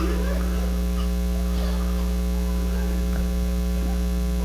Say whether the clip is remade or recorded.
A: recorded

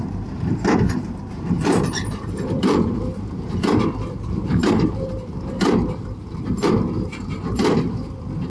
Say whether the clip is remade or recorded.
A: remade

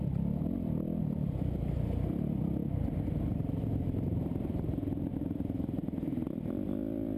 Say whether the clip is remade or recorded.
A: remade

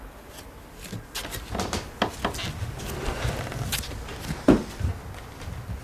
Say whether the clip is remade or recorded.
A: recorded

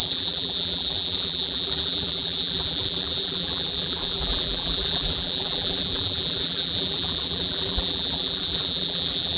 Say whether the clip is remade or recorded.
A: remade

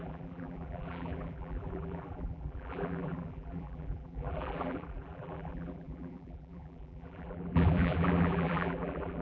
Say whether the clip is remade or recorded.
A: remade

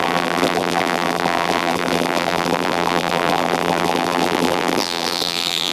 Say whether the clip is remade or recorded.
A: remade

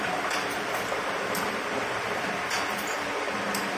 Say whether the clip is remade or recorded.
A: remade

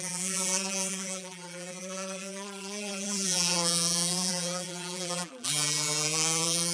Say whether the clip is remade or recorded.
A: remade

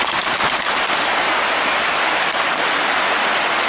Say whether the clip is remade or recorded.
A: recorded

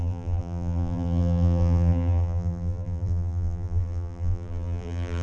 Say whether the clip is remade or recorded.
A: remade